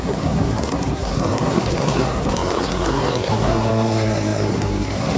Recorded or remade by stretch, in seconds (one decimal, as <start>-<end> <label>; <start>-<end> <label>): 0.0-5.2 remade